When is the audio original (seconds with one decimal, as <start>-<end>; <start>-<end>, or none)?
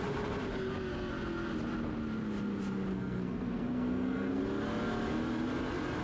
0.0-2.9; 4.4-6.0